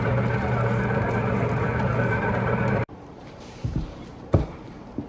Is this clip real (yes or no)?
no